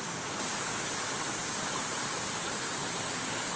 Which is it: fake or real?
real